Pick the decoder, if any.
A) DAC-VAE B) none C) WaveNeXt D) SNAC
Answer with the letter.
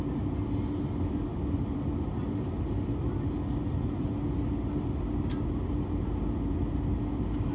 B